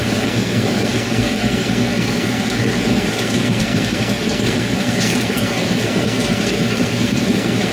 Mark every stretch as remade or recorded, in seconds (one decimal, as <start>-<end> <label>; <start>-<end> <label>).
0.0-7.7 remade